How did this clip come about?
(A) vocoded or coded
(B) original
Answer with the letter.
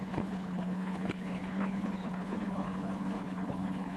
A